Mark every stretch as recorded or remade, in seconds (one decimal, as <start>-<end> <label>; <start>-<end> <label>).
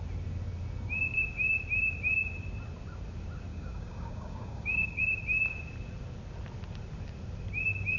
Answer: 0.0-3.5 recorded; 3.5-5.0 remade; 5.0-8.0 recorded